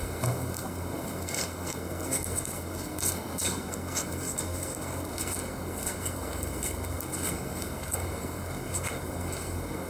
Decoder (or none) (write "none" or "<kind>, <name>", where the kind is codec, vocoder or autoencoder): codec, SNAC